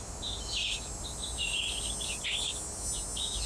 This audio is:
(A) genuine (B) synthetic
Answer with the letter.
A